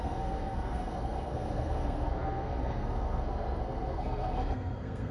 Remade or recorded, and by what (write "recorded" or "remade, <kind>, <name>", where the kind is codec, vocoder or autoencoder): remade, codec, SNAC